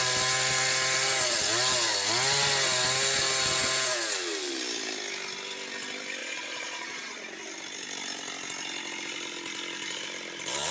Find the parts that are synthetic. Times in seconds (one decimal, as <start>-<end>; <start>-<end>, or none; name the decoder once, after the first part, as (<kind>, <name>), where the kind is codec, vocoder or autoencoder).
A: 6.2-7.2 (vocoder, Vocos)